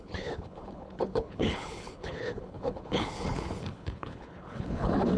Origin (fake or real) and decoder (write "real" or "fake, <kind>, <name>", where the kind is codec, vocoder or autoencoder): fake, codec, HILCodec